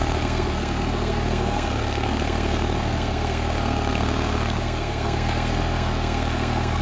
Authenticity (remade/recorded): remade